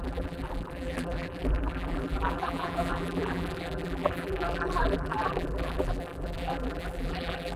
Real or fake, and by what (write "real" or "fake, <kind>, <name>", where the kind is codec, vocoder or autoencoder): fake, vocoder, BigVGAN v2